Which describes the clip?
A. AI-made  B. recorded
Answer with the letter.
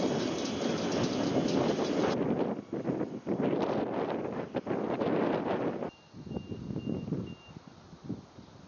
B